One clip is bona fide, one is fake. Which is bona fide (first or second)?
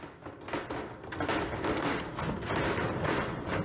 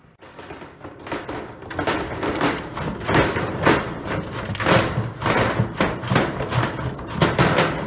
first